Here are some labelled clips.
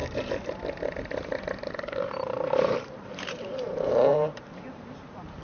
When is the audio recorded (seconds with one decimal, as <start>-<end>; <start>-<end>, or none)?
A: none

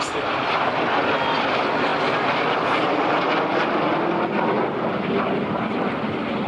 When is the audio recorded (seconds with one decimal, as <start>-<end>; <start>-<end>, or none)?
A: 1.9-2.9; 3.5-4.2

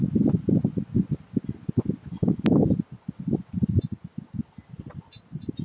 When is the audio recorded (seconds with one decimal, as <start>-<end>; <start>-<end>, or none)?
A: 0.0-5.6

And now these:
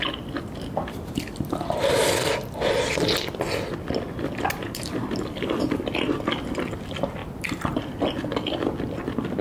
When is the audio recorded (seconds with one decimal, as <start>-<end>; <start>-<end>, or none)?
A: 0.0-7.2; 7.8-9.4

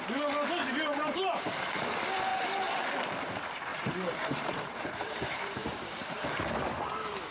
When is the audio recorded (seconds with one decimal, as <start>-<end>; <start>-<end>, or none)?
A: 0.0-0.6; 1.6-2.3; 2.9-3.7; 6.5-7.3

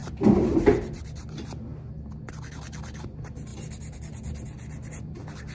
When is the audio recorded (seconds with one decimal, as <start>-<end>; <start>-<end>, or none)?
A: 1.2-5.5